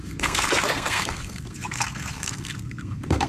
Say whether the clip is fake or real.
fake